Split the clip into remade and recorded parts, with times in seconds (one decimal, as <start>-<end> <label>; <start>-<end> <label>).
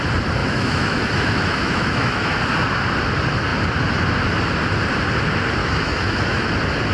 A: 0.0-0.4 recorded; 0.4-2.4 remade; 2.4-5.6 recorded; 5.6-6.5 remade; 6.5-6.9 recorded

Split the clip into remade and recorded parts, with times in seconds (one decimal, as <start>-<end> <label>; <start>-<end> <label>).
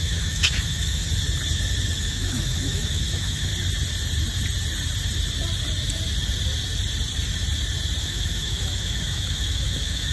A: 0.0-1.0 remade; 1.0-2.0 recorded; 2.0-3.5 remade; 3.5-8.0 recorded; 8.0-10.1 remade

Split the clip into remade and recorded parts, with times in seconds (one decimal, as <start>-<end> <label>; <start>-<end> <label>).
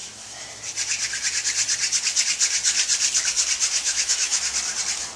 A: 0.0-0.5 remade; 0.5-3.7 recorded; 3.7-4.4 remade; 4.4-5.2 recorded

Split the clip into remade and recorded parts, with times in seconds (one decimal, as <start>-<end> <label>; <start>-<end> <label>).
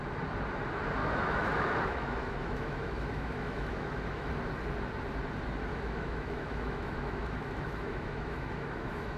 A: 0.0-1.0 recorded; 1.0-4.3 remade; 4.3-5.7 recorded; 5.7-9.2 remade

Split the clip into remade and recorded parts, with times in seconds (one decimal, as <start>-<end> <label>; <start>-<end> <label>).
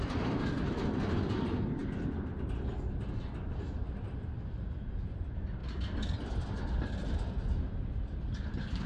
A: 0.0-8.9 recorded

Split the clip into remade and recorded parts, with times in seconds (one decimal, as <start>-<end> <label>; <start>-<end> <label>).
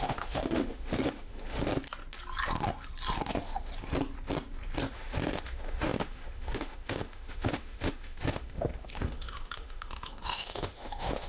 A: 0.0-1.7 remade; 1.7-3.3 recorded; 3.3-3.7 remade; 3.7-4.9 recorded; 4.9-11.3 remade